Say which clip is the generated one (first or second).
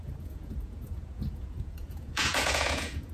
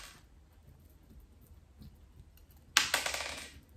first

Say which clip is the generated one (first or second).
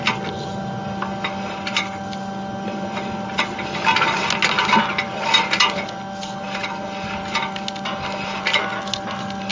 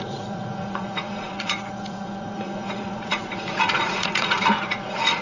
second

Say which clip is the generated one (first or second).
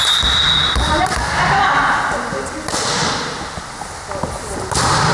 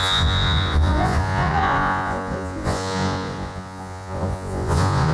second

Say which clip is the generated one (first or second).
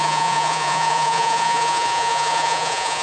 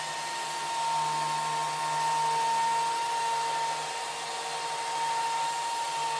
first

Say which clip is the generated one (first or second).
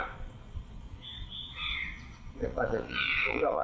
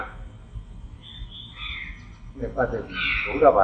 first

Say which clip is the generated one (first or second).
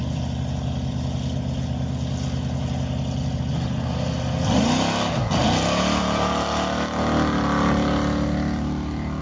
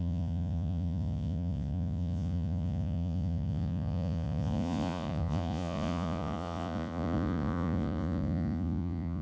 second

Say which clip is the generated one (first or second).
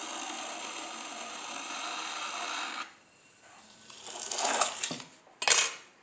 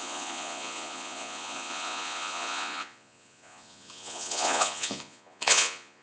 second